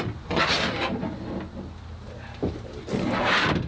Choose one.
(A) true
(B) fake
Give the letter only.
A